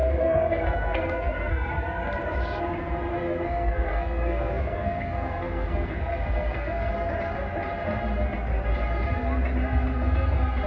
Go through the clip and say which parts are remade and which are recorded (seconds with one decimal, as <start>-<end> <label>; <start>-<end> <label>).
0.0-1.7 remade; 1.7-3.1 recorded; 3.1-6.9 remade; 6.9-10.7 recorded